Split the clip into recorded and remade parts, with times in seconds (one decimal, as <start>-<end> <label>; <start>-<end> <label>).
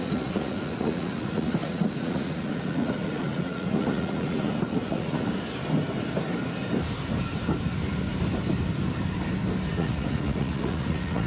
0.0-5.3 remade; 5.3-9.7 recorded; 9.7-11.3 remade